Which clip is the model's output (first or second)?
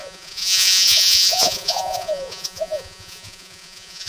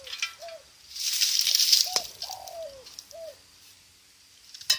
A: first